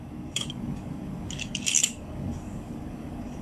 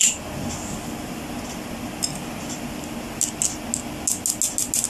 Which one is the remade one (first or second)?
first